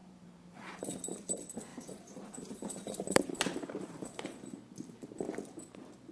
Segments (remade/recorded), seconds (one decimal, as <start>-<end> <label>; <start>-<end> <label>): 0.0-0.8 remade; 0.8-1.7 recorded; 1.7-5.4 remade; 5.4-6.1 recorded